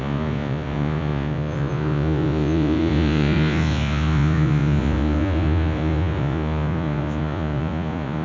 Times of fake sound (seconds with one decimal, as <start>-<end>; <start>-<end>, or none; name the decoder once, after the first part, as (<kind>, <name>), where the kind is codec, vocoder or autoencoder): 0.0-8.2 (vocoder, Vocos)